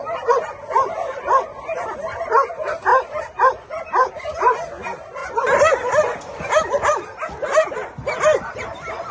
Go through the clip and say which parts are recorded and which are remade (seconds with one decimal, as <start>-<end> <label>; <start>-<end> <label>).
0.0-9.1 recorded